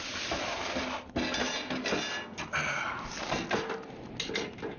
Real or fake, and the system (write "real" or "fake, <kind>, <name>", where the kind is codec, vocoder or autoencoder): real